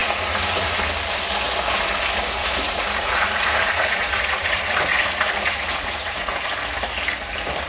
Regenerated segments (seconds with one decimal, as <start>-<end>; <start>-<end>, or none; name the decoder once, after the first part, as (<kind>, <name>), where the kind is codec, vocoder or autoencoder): 0.0-0.8 (vocoder, Vocos); 2.4-6.3